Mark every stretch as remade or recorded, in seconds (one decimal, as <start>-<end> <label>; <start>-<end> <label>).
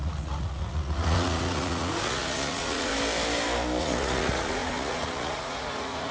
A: 0.0-2.9 remade; 2.9-3.8 recorded; 3.8-6.1 remade